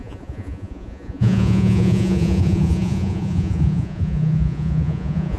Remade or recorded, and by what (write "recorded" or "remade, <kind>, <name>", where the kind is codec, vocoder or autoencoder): remade, vocoder, Vocos